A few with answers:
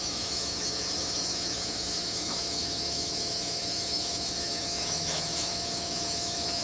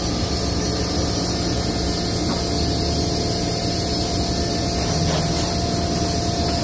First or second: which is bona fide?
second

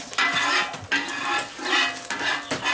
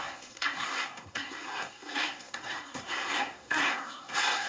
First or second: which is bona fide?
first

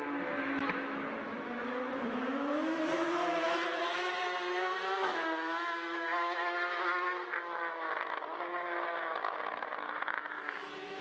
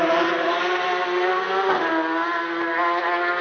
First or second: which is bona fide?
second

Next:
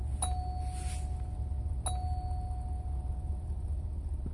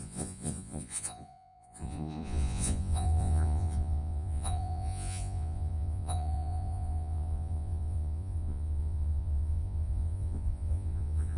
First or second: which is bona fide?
first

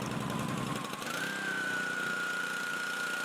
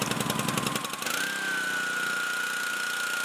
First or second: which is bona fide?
second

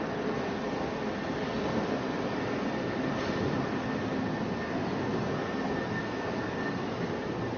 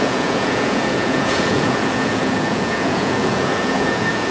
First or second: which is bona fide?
first